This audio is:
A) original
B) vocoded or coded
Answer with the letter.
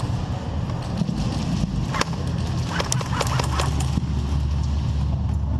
A